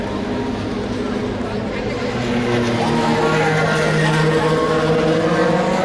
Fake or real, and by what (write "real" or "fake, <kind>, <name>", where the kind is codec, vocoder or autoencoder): real